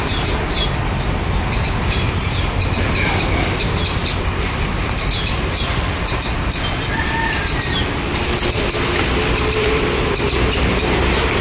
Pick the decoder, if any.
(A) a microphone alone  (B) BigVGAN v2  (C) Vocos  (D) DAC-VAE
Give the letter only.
A